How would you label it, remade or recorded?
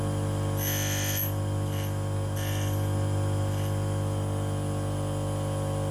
recorded